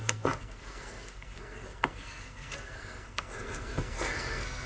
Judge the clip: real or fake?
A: fake